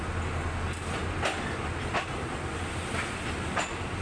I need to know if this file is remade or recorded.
recorded